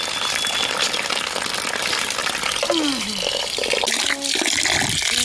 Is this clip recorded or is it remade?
recorded